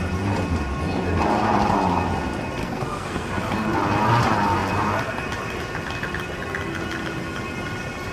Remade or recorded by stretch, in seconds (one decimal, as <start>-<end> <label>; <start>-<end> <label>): 0.0-2.6 recorded; 2.6-3.3 remade; 3.3-8.1 recorded